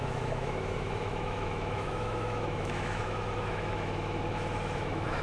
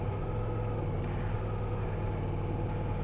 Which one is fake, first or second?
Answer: first